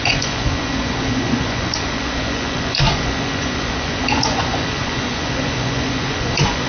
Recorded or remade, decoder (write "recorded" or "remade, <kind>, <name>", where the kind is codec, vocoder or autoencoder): remade, vocoder, Vocos